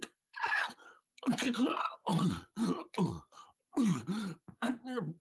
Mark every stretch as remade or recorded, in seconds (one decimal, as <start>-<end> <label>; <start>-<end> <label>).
0.0-5.2 remade